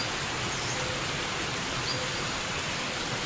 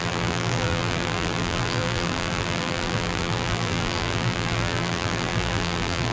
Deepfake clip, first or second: second